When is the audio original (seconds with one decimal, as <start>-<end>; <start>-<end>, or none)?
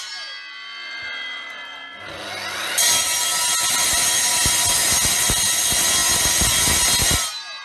0.0-7.6